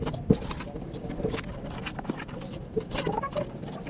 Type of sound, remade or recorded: recorded